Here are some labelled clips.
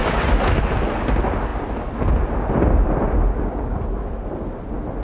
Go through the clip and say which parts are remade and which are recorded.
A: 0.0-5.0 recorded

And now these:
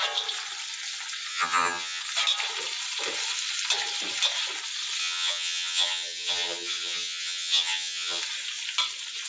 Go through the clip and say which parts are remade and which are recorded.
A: 0.0-1.3 recorded; 1.3-2.0 remade; 2.0-5.0 recorded; 5.0-8.2 remade; 8.2-9.3 recorded

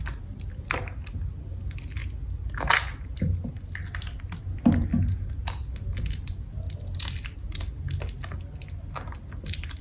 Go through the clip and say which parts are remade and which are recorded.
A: 0.0-9.8 recorded